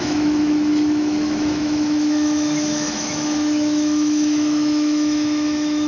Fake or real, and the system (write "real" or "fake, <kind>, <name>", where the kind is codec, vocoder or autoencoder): fake, autoencoder, DAC-VAE